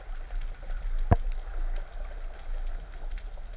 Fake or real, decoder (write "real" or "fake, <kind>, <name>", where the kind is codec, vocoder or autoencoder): real